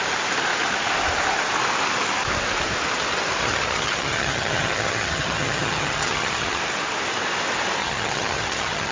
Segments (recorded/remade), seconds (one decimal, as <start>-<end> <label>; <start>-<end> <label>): 0.0-3.4 recorded; 3.4-6.6 remade; 6.6-7.8 recorded; 7.8-8.9 remade